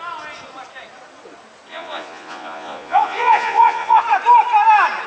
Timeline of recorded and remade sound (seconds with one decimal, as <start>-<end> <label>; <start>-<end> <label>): 0.0-1.7 recorded; 1.7-4.0 remade; 4.0-5.1 recorded